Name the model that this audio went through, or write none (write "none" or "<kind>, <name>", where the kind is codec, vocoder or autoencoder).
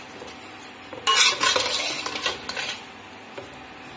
none